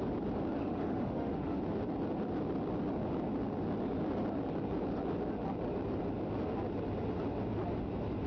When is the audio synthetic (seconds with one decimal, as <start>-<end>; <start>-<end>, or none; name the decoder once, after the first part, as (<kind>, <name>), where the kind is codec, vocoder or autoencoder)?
0.6-1.6 (autoencoder, DAC-VAE)